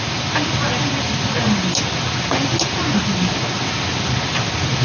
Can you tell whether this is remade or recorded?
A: recorded